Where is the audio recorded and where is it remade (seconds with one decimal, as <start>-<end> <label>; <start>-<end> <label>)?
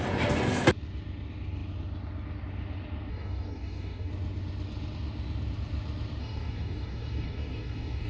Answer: 0.0-3.1 recorded; 3.1-4.1 remade; 4.1-6.2 recorded; 6.2-8.1 remade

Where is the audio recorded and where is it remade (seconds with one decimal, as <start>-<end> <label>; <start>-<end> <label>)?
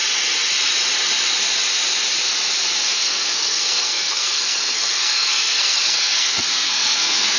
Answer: 0.0-2.8 recorded; 2.8-7.4 remade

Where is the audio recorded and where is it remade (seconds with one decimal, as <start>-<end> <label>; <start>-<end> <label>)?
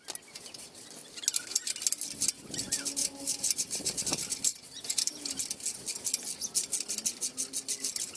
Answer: 0.0-3.0 recorded; 3.0-4.0 remade; 4.0-8.2 recorded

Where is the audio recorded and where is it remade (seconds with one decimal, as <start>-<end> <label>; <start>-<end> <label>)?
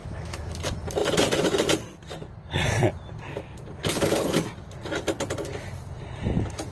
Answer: 0.0-0.6 remade; 0.6-6.7 recorded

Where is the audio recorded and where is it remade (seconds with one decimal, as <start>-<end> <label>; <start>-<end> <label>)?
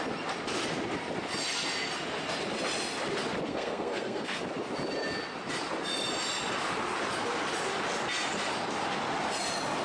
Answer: 0.0-3.5 recorded; 3.5-4.4 remade; 4.4-9.8 recorded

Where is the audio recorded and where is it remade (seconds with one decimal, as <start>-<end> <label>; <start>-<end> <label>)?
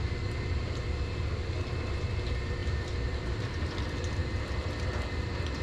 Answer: 0.0-2.6 recorded; 2.6-3.8 remade; 3.8-4.2 recorded; 4.2-4.8 remade; 4.8-5.6 recorded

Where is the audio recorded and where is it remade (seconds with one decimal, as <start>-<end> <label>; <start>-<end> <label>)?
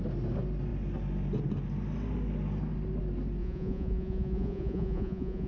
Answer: 0.0-3.4 recorded; 3.4-5.5 remade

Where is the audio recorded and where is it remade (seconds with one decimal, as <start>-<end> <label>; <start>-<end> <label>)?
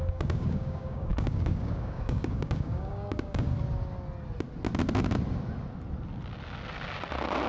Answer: 0.0-3.5 remade; 3.5-7.5 recorded